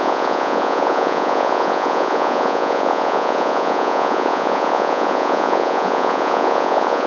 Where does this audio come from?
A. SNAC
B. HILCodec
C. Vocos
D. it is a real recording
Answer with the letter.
C